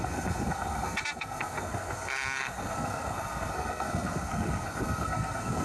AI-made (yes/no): yes